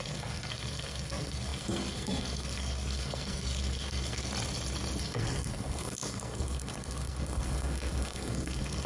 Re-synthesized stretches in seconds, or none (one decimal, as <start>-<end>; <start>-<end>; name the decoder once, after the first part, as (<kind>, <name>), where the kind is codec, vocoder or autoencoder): 0.0-4.3 (codec, SNAC); 5.0-8.9